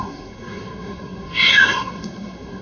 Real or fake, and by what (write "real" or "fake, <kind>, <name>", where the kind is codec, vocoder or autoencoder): fake, codec, SNAC